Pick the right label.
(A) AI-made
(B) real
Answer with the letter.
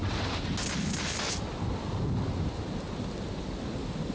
B